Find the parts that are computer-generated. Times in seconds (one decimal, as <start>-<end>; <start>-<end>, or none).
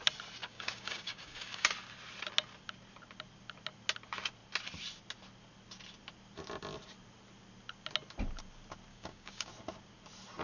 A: 0.4-1.7; 8.9-9.5